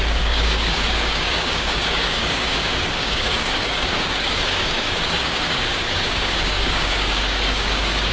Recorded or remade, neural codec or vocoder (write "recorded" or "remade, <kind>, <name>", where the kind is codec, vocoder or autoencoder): remade, codec, DAC